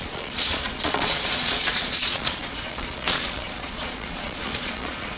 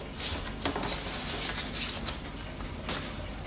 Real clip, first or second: second